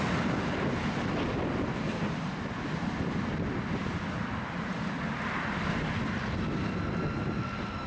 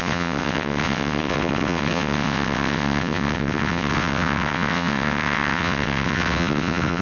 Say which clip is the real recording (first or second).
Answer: first